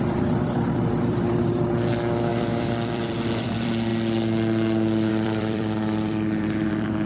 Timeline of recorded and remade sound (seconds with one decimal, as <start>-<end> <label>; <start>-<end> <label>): 0.0-3.9 remade; 3.9-5.1 recorded; 5.1-7.1 remade